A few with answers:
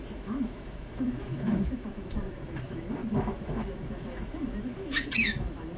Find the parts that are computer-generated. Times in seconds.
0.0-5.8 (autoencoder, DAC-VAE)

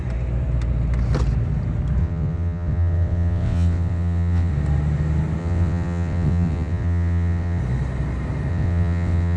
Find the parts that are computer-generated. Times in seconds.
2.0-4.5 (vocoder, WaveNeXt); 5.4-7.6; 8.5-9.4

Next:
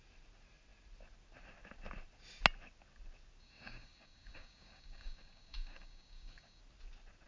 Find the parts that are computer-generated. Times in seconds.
3.4-6.6 (codec, DAC)

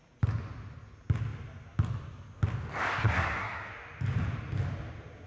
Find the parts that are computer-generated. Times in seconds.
3.0-3.7 (codec, SNAC)

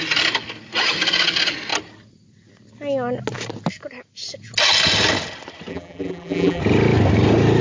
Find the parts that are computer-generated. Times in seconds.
5.7-6.6 (vocoder, BigVGAN v2)

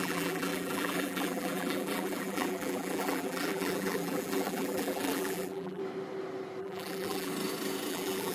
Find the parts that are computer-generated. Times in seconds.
0.0-5.8 (vocoder, BigVGAN v2); 6.6-7.3; 7.9-8.3

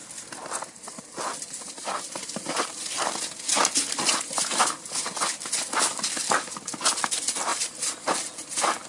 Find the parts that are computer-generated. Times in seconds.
7.5-8.9 (vocoder, BigVGAN v2)

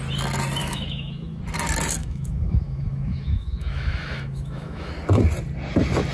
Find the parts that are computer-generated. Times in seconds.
0.6-1.4 (autoencoder, DAC-VAE); 2.0-4.9